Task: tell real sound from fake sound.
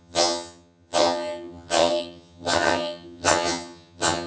fake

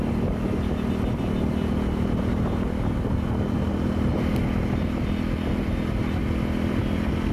real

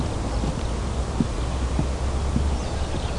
real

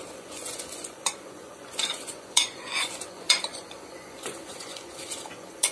fake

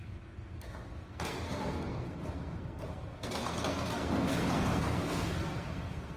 fake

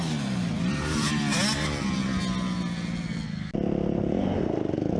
real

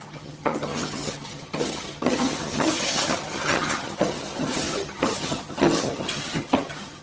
fake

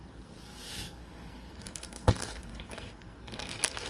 fake